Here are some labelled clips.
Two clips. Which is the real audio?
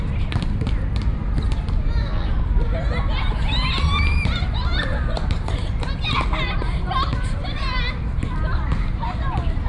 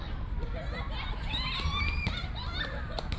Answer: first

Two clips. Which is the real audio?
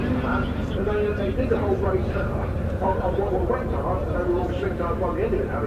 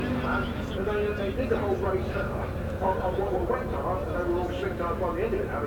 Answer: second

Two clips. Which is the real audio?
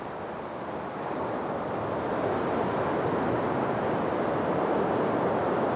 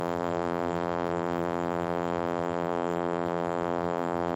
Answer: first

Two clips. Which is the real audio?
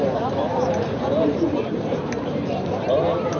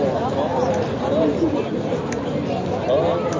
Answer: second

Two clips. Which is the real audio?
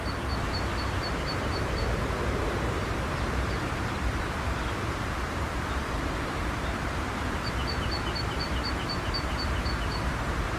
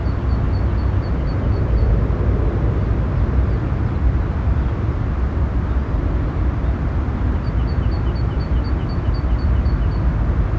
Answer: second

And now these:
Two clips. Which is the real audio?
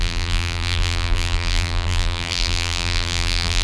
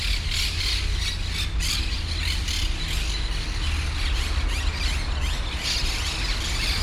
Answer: second